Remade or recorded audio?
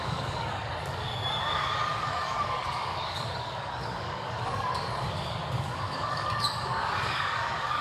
remade